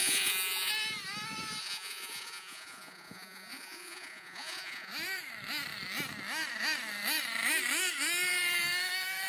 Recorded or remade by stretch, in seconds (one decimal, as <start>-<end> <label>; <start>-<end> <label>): 0.0-0.7 remade; 0.7-1.6 recorded; 1.6-4.9 remade; 4.9-9.3 recorded